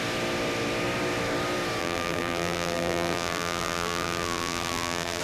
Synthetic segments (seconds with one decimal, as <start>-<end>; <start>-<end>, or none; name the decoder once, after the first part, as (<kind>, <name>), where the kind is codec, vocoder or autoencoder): 1.8-5.2 (vocoder, BigVGAN v2)